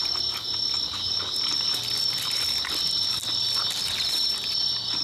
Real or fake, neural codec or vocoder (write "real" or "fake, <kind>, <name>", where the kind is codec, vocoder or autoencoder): real